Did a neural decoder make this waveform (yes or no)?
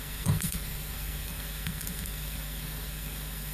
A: yes